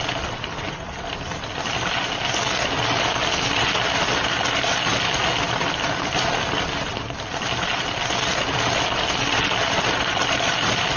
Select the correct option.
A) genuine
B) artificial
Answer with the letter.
A